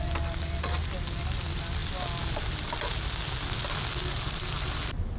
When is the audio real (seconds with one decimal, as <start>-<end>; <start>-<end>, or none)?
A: 0.0-5.2